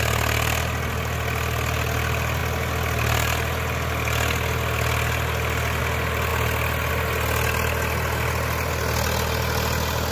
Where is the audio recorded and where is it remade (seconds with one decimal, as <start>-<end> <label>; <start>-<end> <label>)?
0.0-10.1 recorded

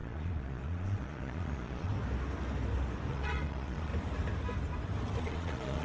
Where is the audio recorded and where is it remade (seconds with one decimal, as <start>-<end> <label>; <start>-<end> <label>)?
0.0-1.9 remade; 1.9-3.1 recorded; 3.1-3.9 remade; 3.9-5.2 recorded; 5.2-5.8 remade

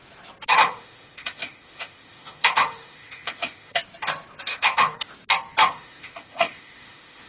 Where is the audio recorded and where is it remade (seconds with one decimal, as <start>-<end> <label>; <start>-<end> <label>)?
0.0-0.6 recorded; 0.6-3.8 remade; 3.8-4.5 recorded; 4.5-5.1 remade; 5.1-5.6 recorded; 5.6-7.3 remade

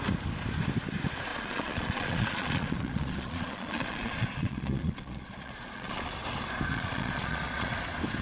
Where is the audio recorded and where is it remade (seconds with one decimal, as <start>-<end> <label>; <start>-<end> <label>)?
0.0-1.3 recorded; 1.3-6.1 remade; 6.1-6.7 recorded; 6.7-7.7 remade; 7.7-8.2 recorded

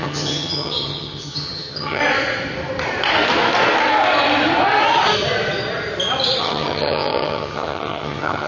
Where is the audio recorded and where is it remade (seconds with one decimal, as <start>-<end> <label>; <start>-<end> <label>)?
0.0-2.0 remade; 2.0-6.4 recorded; 6.4-8.5 remade

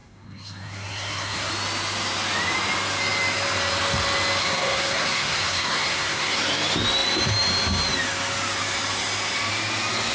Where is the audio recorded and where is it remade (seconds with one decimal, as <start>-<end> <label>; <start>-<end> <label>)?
0.0-1.5 remade; 1.5-4.4 recorded; 4.4-6.4 remade; 6.4-10.1 recorded

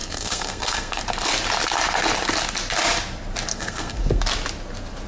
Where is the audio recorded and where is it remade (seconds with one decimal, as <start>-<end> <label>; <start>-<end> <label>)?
0.0-1.0 remade; 1.0-3.5 recorded; 3.5-4.2 remade; 4.2-5.1 recorded

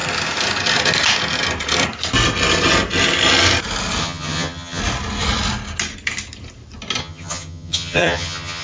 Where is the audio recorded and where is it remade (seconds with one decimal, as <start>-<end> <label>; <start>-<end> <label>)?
0.0-4.0 recorded; 4.0-4.8 remade; 4.8-7.0 recorded; 7.0-8.6 remade